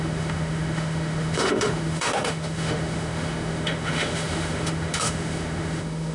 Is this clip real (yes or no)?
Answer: no